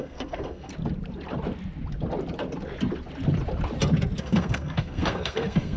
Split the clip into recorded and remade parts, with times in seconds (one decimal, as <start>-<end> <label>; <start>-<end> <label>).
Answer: 0.0-0.7 remade; 0.7-4.2 recorded; 4.2-5.8 remade